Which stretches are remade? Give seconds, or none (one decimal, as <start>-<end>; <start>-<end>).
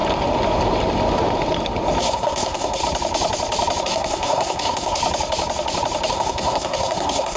2.0-2.8; 3.8-5.0; 6.1-7.4